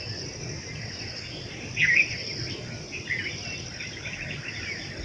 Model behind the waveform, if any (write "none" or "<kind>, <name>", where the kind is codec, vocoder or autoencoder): none